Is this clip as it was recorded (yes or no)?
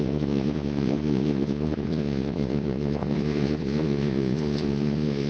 no